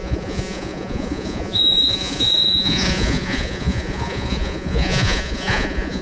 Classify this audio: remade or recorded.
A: remade